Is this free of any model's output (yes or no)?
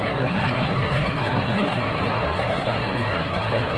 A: no